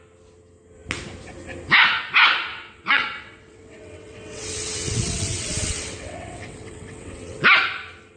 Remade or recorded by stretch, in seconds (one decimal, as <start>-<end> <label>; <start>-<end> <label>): 0.0-2.5 recorded; 2.5-7.4 remade; 7.4-8.2 recorded